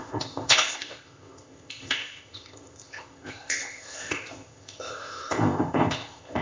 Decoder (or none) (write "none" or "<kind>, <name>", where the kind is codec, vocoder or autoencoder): codec, ZipCodec